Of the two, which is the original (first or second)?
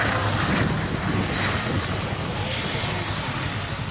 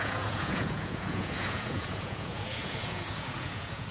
first